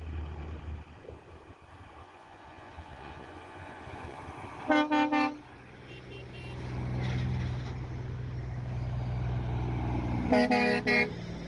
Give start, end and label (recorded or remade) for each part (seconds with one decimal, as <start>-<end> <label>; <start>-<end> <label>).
0.0-2.0 recorded; 2.0-4.2 remade; 4.2-11.5 recorded